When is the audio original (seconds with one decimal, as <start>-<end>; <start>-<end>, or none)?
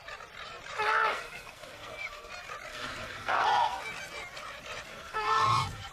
0.0-1.1; 2.3-2.7; 3.8-4.9